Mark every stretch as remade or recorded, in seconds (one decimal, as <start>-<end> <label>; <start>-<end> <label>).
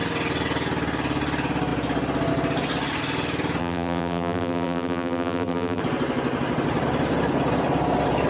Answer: 0.0-3.6 recorded; 3.6-5.8 remade; 5.8-8.3 recorded